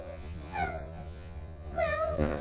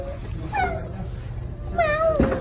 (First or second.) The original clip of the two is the second